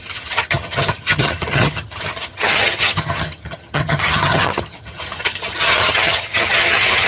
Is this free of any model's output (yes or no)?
no